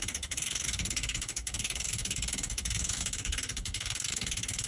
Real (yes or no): no